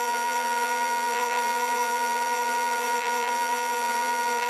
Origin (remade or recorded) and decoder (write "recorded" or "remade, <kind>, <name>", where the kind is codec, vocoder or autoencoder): remade, vocoder, BigVGAN v2